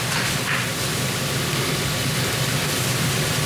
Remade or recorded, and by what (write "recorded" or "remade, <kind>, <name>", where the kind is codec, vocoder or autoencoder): recorded